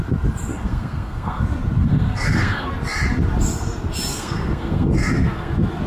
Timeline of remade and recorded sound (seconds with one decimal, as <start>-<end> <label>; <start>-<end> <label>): 0.0-0.5 recorded; 0.5-1.4 remade; 1.4-1.8 recorded; 1.8-2.7 remade; 2.7-4.1 recorded; 4.1-5.5 remade; 5.5-5.9 recorded